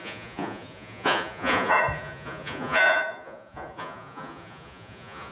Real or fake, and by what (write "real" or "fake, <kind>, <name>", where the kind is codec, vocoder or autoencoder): fake, vocoder, Vocos